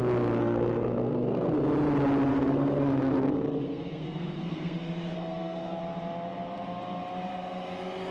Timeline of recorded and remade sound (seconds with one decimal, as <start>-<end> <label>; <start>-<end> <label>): 0.0-0.4 recorded; 0.4-1.5 remade; 1.5-2.3 recorded; 2.3-5.8 remade; 5.8-8.1 recorded

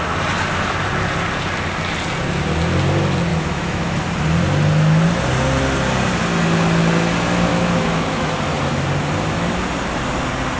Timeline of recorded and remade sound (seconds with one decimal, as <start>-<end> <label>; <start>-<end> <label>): 0.0-3.3 recorded; 3.3-4.0 remade; 4.0-7.5 recorded; 7.5-8.3 remade; 8.3-10.6 recorded

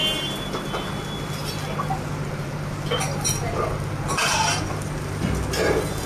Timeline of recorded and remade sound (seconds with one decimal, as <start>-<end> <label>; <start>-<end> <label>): 0.0-6.1 recorded

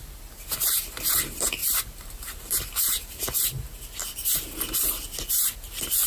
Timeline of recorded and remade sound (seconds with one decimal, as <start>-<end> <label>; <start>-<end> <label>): 0.0-6.1 recorded